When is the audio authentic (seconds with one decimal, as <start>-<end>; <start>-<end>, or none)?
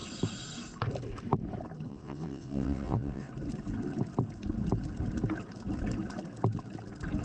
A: 0.0-1.9; 3.3-7.2